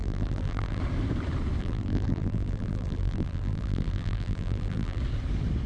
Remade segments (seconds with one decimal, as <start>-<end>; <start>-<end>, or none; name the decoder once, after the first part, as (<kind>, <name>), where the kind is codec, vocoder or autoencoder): 0.0-0.8 (vocoder, BigVGAN v2); 1.6-5.0